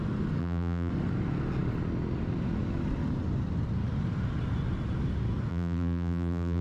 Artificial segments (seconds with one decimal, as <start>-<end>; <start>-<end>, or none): 0.4-0.9; 5.5-6.6